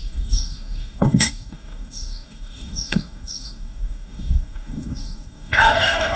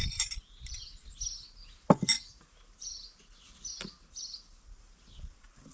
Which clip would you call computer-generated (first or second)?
first